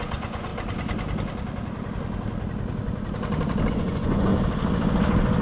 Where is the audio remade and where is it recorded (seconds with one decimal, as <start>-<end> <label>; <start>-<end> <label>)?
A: 0.0-0.5 remade; 0.5-3.7 recorded; 3.7-4.3 remade; 4.3-5.4 recorded

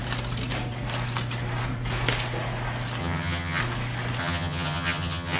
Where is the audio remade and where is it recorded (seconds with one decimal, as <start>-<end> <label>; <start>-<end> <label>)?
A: 0.0-3.0 recorded; 3.0-3.6 remade; 3.6-4.2 recorded; 4.2-5.4 remade

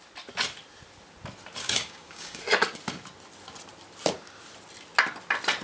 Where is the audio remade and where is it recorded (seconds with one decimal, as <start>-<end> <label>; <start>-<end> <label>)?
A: 0.0-1.6 recorded; 1.6-2.4 remade; 2.4-5.6 recorded

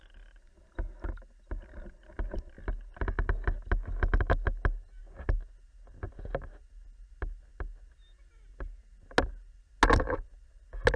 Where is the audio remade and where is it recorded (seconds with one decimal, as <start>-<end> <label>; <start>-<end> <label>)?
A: 0.0-11.0 recorded

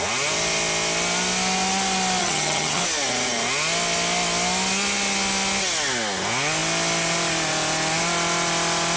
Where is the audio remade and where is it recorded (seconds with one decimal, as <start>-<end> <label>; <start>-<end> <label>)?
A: 0.0-2.2 recorded; 2.2-2.8 remade; 2.8-9.0 recorded